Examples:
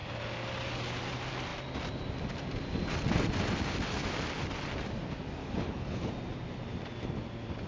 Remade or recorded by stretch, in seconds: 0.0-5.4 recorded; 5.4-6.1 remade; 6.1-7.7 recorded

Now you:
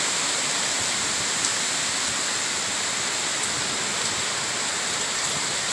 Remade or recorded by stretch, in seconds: 0.0-1.5 remade; 1.5-4.9 recorded; 4.9-5.7 remade

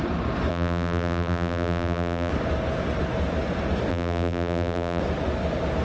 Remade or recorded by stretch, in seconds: 0.0-0.5 recorded; 0.5-2.3 remade; 2.3-3.9 recorded; 3.9-5.0 remade; 5.0-5.8 recorded

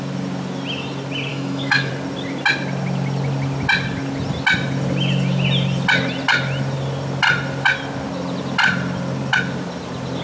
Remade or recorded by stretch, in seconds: 0.0-1.3 recorded; 1.3-1.9 remade; 1.9-10.2 recorded

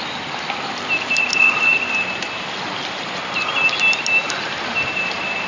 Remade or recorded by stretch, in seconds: 0.0-5.5 recorded